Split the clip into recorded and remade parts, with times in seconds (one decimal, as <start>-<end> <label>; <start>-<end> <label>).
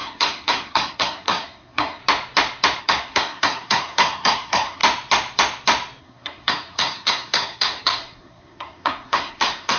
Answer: 0.0-2.0 remade; 2.0-2.8 recorded; 2.8-4.8 remade; 4.8-6.0 recorded; 6.0-9.8 remade